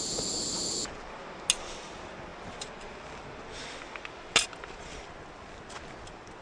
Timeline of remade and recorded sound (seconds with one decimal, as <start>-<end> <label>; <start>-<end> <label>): 0.0-6.4 recorded